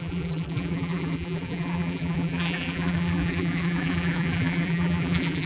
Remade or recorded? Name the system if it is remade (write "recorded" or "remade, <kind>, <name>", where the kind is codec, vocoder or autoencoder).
remade, vocoder, BigVGAN v2